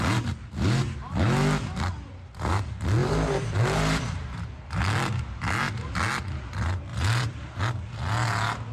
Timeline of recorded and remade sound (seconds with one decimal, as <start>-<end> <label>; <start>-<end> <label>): 0.0-3.0 recorded; 3.0-5.2 remade; 5.2-6.9 recorded; 6.9-7.6 remade; 7.6-8.7 recorded